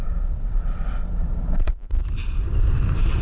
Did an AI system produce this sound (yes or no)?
yes